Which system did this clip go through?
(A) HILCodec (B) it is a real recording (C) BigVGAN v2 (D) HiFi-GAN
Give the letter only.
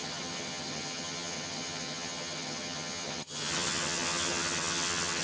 D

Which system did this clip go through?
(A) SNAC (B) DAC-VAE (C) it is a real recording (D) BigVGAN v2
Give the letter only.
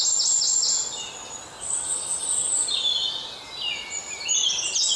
C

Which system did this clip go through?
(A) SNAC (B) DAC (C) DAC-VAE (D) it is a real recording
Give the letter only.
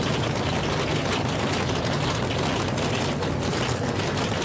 D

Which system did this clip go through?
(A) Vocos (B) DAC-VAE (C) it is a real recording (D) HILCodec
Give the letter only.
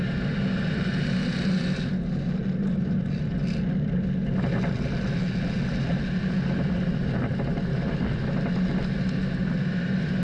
C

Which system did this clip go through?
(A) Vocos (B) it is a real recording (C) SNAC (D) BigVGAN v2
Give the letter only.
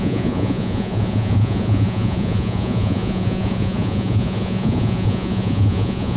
A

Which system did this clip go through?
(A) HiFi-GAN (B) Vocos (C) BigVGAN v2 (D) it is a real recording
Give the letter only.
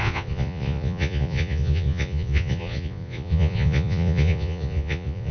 B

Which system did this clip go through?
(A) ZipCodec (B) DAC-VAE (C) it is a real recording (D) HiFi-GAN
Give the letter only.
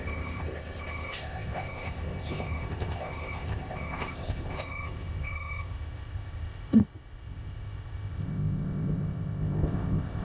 A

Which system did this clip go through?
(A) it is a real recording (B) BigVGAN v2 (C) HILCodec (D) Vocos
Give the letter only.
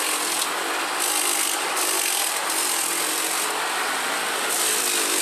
B